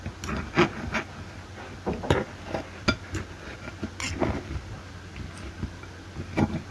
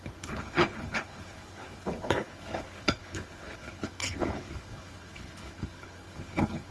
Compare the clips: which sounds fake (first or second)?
second